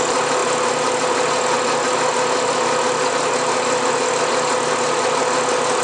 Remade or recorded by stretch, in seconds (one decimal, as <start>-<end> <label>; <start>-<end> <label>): 0.0-5.8 recorded